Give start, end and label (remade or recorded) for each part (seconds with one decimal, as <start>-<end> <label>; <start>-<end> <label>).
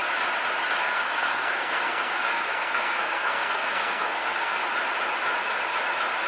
0.0-0.8 recorded; 0.8-4.6 remade; 4.6-6.3 recorded